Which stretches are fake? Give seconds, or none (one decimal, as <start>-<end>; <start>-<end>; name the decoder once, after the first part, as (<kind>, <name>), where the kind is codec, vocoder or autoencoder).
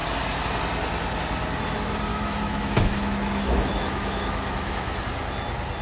2.1-5.0 (autoencoder, DAC-VAE)